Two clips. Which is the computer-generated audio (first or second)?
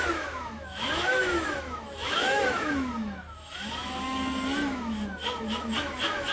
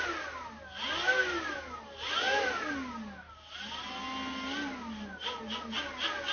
first